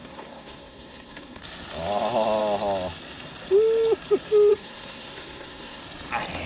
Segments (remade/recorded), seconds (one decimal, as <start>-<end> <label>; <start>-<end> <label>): 0.0-1.4 remade; 1.4-4.5 recorded; 4.5-5.8 remade; 5.8-6.5 recorded